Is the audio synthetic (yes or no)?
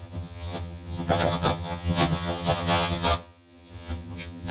yes